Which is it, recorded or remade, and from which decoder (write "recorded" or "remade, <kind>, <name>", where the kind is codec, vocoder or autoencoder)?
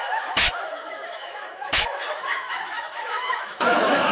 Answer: remade, autoencoder, DAC-VAE